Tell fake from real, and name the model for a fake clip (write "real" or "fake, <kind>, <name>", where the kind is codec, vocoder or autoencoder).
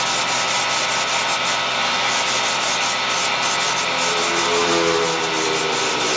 real